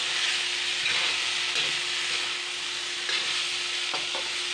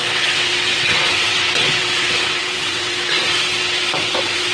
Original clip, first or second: first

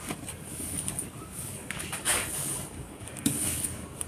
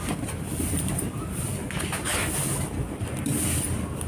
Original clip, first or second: second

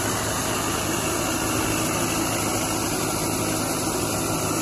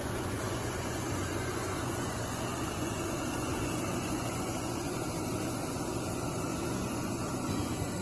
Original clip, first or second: first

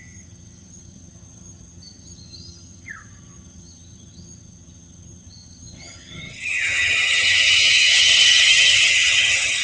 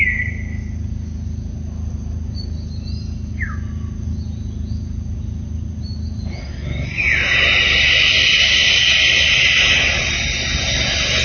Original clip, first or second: second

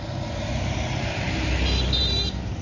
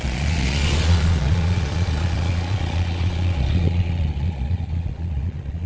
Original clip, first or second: first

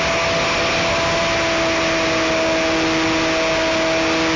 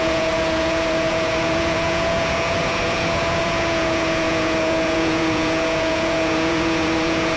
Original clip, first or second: first